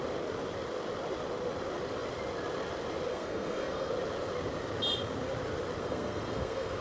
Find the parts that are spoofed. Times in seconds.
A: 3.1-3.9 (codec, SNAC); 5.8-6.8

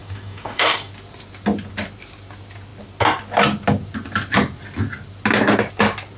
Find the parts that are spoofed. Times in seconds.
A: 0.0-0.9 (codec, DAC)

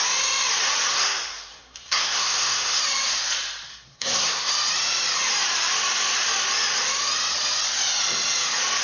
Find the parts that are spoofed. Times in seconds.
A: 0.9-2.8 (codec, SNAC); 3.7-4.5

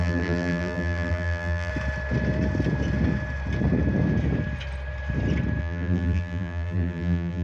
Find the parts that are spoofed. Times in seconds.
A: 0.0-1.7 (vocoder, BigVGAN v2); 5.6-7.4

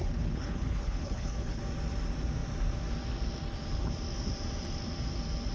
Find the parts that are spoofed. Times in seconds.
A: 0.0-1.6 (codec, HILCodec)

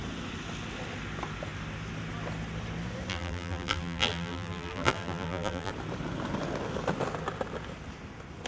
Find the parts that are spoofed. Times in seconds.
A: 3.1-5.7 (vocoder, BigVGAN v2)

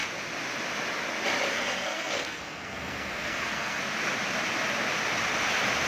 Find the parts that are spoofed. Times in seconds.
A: 1.5-3.8 (codec, SNAC)